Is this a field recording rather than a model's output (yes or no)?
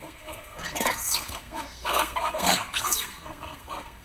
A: no